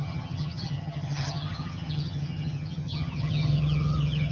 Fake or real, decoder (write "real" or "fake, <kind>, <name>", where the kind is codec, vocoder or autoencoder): fake, vocoder, HiFi-GAN